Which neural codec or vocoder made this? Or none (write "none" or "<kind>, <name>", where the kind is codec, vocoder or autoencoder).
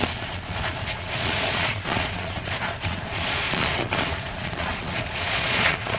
vocoder, Vocos